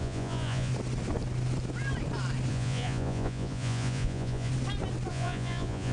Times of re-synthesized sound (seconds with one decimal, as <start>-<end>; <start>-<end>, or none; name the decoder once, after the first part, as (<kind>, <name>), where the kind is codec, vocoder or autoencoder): 0.0-0.7 (vocoder, Vocos); 2.5-4.5; 5.1-5.9

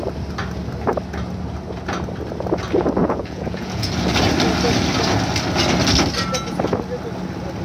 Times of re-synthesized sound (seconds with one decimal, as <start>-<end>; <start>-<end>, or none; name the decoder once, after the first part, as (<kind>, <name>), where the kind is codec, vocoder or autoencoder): 3.0-3.9 (vocoder, Vocos)

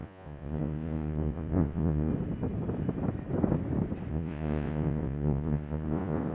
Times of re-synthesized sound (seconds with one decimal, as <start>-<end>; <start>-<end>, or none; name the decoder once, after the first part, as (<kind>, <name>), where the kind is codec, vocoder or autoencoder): 0.0-2.1 (vocoder, Vocos); 4.1-6.3

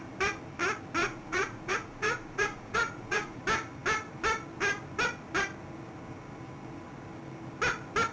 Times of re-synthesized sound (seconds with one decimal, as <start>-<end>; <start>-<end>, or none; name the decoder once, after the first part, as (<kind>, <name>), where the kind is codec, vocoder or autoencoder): 1.0-3.4 (vocoder, Vocos)

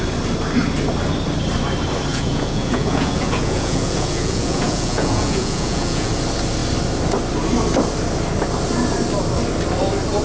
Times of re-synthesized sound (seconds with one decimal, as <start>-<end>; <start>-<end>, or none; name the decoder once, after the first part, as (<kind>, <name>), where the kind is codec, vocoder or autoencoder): 2.1-6.1 (vocoder, Vocos)

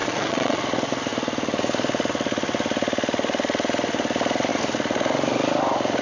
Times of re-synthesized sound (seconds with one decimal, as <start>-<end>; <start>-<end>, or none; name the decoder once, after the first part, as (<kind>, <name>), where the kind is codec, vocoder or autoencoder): 0.0-0.6 (vocoder, Vocos)

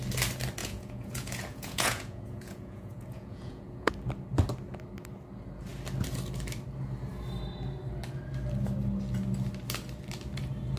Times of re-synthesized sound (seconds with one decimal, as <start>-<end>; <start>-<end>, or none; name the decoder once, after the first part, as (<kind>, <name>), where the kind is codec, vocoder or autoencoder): 0.6-3.9 (vocoder, Vocos)